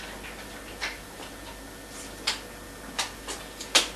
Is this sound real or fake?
real